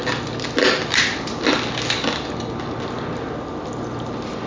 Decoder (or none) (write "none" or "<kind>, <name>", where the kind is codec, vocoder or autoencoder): none